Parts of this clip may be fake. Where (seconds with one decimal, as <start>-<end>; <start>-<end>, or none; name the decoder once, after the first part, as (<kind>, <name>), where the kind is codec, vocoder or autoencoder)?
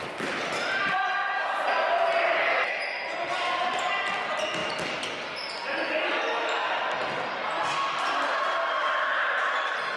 none